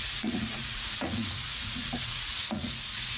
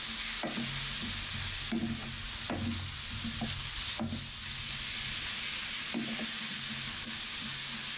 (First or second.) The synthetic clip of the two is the first